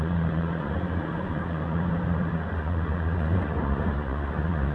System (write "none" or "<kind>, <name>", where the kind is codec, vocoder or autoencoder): vocoder, Vocos